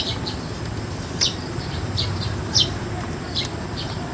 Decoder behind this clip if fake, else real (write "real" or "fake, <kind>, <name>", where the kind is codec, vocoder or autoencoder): fake, vocoder, BigVGAN v2